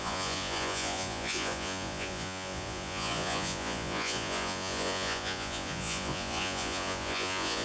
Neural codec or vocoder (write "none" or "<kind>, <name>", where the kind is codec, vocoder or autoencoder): vocoder, Vocos